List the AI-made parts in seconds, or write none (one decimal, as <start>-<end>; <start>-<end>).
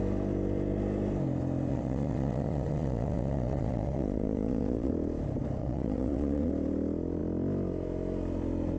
1.7-4.9; 5.6-6.5